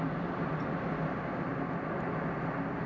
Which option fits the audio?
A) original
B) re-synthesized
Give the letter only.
A